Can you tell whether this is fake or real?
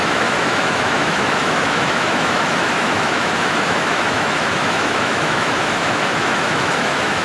fake